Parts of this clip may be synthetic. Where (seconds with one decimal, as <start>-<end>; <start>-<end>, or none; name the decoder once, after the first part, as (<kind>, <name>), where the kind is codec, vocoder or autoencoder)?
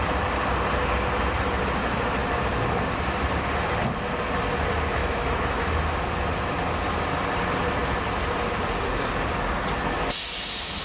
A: 5.0-5.7 (autoencoder, DAC-VAE)